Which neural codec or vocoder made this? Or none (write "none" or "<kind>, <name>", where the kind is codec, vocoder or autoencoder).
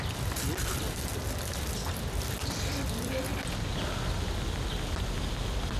none